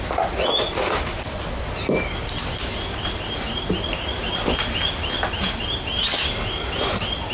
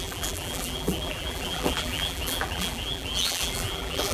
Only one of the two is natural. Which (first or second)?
first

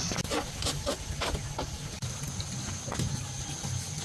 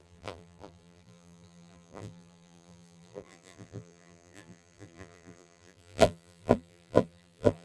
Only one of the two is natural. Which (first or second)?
first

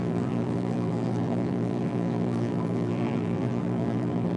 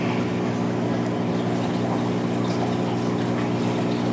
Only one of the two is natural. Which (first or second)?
second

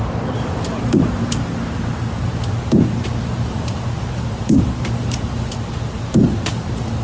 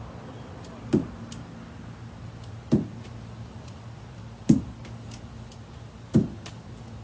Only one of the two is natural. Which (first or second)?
second